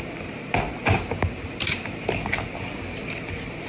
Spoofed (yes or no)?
no